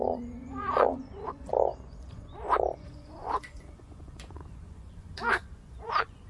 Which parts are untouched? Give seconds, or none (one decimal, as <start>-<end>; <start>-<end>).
none